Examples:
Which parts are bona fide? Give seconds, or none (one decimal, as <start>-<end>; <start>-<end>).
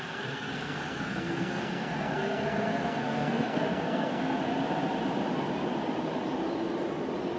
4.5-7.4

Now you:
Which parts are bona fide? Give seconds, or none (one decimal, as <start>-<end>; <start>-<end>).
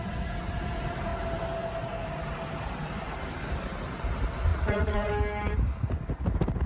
0.0-4.5; 5.1-6.7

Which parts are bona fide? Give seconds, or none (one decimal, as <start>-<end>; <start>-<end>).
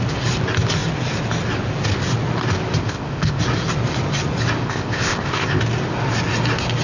0.0-2.8; 3.4-4.6; 5.6-6.8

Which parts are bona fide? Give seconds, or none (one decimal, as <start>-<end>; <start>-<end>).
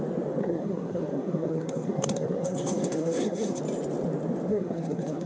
0.0-0.4; 3.6-4.5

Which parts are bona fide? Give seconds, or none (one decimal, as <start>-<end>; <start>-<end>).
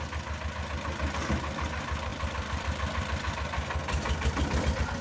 0.0-2.1; 3.3-5.0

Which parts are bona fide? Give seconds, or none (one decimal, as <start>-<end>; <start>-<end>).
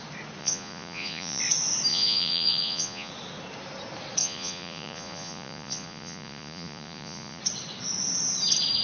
0.0-0.4; 1.4-1.9; 3.1-4.2; 7.4-8.8